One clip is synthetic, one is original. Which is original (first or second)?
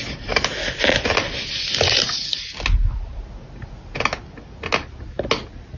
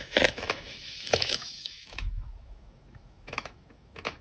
first